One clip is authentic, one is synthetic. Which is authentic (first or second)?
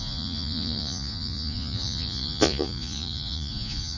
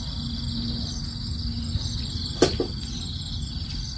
second